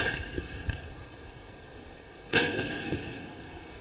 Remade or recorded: remade